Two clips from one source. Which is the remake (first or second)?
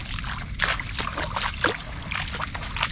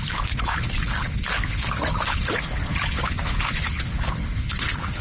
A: second